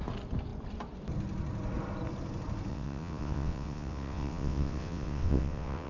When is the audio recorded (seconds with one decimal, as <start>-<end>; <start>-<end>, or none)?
0.0-2.7